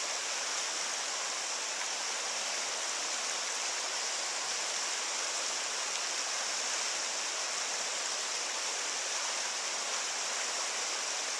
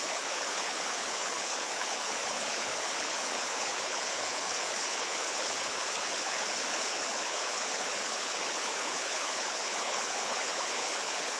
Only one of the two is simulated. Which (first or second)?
second